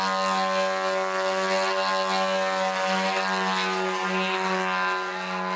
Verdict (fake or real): real